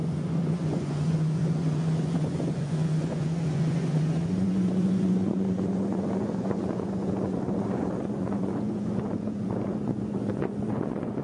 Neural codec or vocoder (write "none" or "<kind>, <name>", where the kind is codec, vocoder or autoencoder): vocoder, Vocos